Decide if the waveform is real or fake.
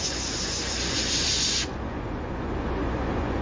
fake